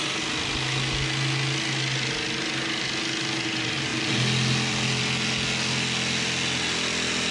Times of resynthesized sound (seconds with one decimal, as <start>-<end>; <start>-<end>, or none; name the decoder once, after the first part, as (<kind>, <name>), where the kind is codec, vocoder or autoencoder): none